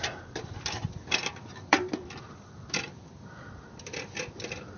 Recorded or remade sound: remade